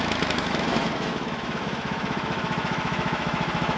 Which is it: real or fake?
fake